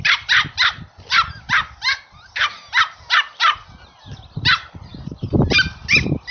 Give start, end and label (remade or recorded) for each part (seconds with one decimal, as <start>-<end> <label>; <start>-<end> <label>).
0.0-1.6 remade; 1.6-4.1 recorded; 4.1-6.3 remade